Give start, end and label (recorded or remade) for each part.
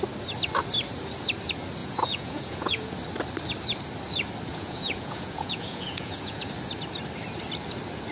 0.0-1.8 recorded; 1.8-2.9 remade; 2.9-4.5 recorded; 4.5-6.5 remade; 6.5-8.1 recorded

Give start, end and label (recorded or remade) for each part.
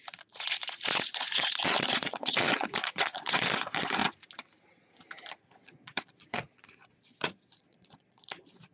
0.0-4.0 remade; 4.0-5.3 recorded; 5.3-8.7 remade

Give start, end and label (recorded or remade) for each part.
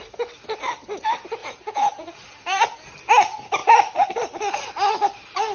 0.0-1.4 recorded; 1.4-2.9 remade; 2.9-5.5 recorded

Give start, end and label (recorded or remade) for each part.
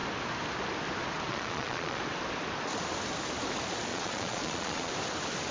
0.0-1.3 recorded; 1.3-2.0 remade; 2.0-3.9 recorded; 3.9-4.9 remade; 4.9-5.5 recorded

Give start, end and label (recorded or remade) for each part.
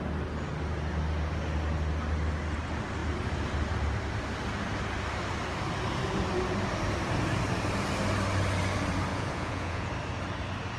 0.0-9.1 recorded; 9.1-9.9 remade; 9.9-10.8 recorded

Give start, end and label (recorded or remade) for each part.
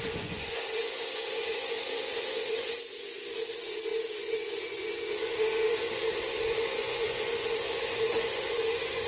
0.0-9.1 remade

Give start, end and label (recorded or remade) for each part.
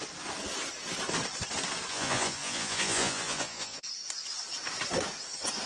0.0-1.9 recorded; 1.9-3.8 remade; 3.8-5.7 recorded